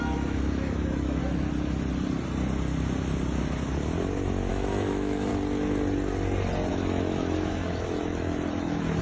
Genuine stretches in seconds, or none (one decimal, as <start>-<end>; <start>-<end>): 1.2-4.5; 5.3-6.7